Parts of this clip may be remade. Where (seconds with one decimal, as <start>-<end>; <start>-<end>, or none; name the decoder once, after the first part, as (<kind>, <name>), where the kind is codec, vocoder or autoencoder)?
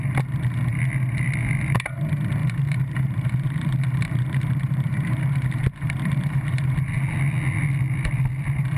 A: 2.4-6.7 (vocoder, BigVGAN v2)